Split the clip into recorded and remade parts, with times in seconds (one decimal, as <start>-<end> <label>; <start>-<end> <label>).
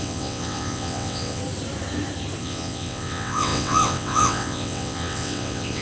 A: 0.0-1.4 remade; 1.4-2.4 recorded; 2.4-5.8 remade